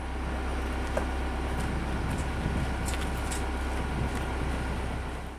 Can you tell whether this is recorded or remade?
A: recorded